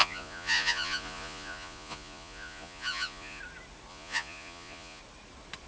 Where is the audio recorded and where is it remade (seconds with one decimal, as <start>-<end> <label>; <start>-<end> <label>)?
0.0-3.4 remade; 3.4-3.9 recorded; 3.9-5.0 remade; 5.0-5.7 recorded